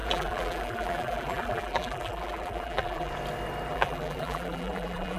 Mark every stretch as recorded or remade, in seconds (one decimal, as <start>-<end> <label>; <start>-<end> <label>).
0.0-3.1 remade; 3.1-3.7 recorded; 3.7-5.2 remade